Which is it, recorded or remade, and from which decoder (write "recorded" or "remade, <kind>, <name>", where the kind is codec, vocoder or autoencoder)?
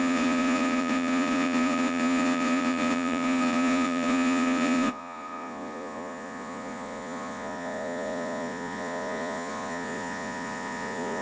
remade, vocoder, Vocos